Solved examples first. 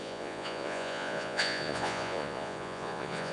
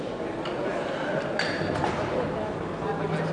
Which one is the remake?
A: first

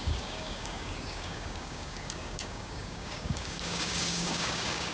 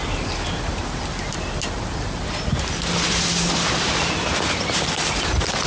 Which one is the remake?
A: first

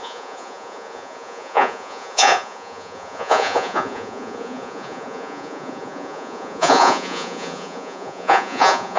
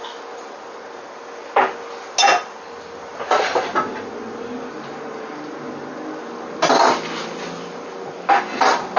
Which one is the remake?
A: first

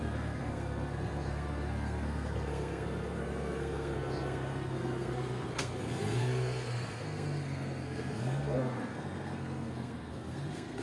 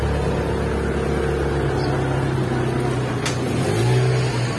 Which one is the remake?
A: first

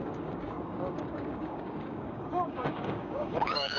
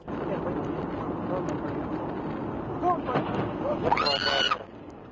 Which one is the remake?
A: first